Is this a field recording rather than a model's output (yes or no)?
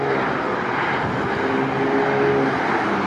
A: yes